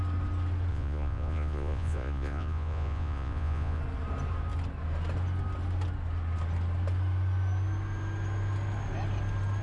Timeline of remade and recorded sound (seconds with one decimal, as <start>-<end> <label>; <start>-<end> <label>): 0.0-0.7 recorded; 0.7-3.8 remade; 3.8-9.6 recorded